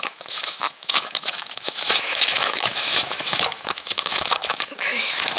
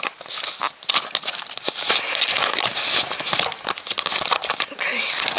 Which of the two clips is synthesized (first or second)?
first